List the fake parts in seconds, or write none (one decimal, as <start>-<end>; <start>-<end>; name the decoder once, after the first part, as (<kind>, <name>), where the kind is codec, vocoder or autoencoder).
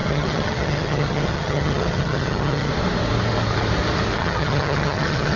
0.0-2.7 (vocoder, HiFi-GAN); 4.2-5.4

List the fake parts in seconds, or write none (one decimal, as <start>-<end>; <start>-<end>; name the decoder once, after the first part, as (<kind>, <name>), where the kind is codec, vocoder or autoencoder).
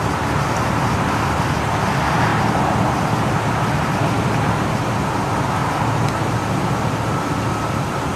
none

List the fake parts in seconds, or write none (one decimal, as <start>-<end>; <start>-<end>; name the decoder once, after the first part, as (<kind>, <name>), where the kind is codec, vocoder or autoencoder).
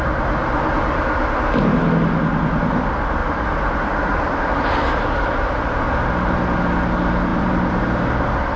0.4-1.0 (vocoder, BigVGAN v2); 3.2-5.0; 7.3-7.8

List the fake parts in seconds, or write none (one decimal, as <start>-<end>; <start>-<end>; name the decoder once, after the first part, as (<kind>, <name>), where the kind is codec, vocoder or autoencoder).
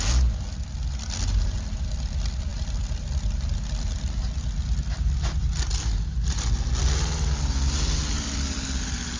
none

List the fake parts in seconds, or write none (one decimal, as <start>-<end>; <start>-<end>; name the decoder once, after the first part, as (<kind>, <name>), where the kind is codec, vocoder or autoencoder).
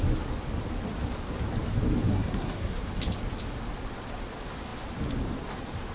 2.1-2.9 (codec, SNAC)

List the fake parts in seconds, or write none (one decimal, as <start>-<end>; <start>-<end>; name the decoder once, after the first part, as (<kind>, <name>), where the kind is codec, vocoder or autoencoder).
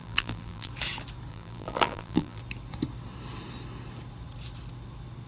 0.0-0.7 (vocoder, BigVGAN v2); 1.3-2.4